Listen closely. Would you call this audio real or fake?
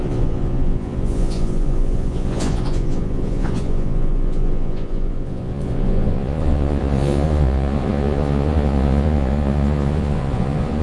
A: fake